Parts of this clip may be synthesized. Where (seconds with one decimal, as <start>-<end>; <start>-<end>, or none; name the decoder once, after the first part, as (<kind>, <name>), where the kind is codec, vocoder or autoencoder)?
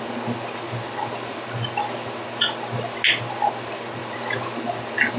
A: none